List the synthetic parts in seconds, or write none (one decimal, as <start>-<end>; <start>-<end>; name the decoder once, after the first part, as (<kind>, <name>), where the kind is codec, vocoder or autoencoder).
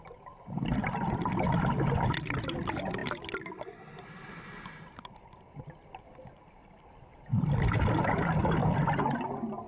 8.6-9.2 (vocoder, BigVGAN v2)